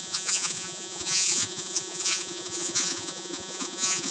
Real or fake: fake